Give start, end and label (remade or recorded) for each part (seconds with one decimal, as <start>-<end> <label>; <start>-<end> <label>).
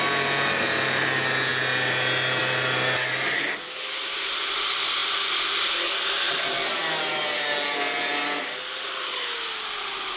0.0-10.2 recorded